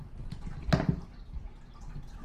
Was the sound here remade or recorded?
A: recorded